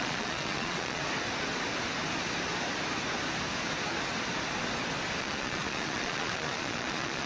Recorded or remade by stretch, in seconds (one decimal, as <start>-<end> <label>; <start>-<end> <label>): 0.0-1.0 remade; 1.0-5.2 recorded; 5.2-7.3 remade